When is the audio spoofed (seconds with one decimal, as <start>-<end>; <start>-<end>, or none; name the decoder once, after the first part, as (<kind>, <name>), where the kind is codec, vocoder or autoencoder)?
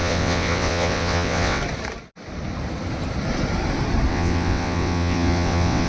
0.0-1.6 (vocoder, WaveNeXt); 4.1-5.9